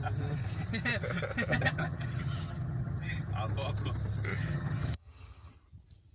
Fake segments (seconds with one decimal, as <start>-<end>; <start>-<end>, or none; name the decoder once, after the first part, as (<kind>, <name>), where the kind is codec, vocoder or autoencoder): 1.5-3.3 (vocoder, HiFi-GAN); 4.4-5.5

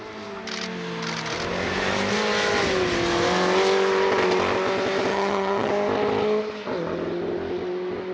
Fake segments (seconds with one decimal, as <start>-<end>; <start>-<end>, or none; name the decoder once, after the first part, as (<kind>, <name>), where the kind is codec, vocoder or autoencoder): 5.1-5.7 (vocoder, HiFi-GAN)

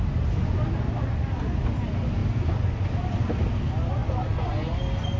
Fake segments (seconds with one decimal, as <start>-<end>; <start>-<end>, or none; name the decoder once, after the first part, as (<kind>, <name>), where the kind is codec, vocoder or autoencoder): none

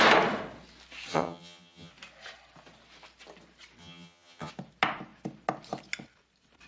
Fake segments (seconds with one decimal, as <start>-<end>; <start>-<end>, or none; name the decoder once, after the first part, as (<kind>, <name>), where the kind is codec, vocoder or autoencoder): 1.1-1.9 (vocoder, HiFi-GAN); 3.8-4.5